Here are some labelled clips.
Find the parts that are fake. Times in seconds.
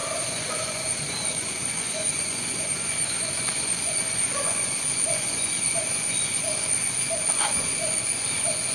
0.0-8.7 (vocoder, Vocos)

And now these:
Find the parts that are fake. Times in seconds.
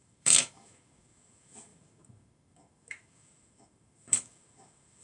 0.0-5.0 (autoencoder, DAC-VAE)